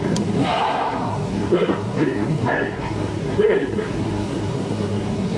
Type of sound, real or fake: fake